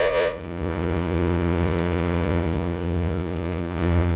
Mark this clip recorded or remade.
remade